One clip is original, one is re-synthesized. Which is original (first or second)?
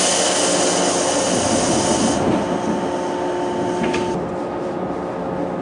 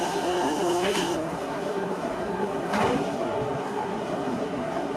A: first